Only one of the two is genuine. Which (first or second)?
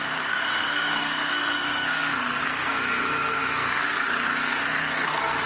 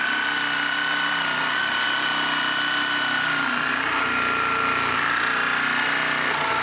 second